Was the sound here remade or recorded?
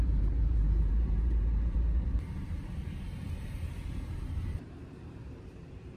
remade